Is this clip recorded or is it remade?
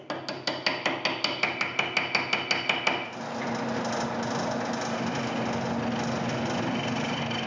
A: recorded